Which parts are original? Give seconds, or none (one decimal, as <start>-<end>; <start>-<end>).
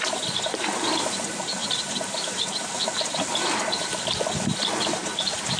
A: 0.0-5.6